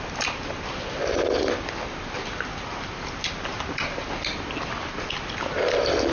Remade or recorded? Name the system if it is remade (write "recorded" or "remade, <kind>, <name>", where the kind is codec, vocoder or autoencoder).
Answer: recorded